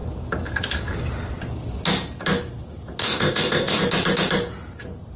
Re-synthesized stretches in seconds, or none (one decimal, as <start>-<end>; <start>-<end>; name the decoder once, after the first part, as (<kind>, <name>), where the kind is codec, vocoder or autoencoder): 3.0-3.8 (codec, ZipCodec)